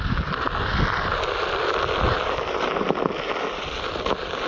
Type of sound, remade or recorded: recorded